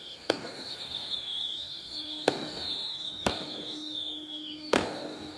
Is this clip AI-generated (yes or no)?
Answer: yes